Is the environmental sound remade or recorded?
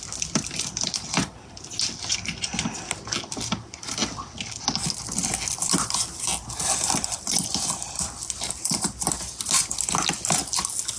recorded